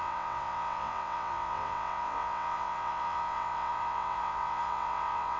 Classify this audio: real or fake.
fake